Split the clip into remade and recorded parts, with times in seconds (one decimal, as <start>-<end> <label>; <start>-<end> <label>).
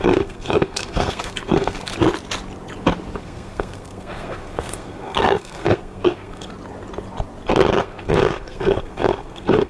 0.0-1.9 remade; 1.9-3.2 recorded; 3.2-6.5 remade; 6.5-7.8 recorded; 7.8-9.7 remade